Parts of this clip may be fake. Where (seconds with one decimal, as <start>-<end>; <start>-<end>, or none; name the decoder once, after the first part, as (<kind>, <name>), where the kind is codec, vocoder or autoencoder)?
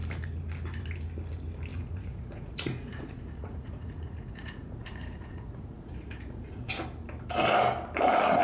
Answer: 1.7-6.7 (vocoder, Vocos)